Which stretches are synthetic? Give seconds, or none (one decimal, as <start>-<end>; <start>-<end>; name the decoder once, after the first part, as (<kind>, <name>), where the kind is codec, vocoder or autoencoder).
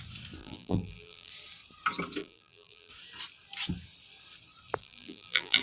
0.4-1.3 (vocoder, BigVGAN v2); 2.2-2.9; 4.8-5.6